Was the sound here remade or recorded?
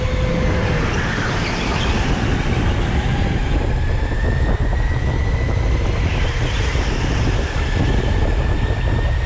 recorded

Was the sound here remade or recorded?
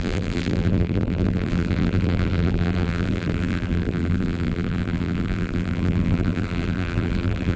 remade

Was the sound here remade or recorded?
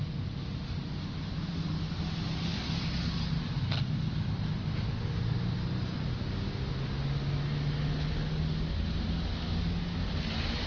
recorded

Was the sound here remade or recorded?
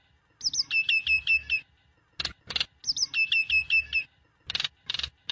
recorded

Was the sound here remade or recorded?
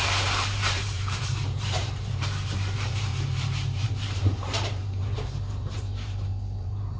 remade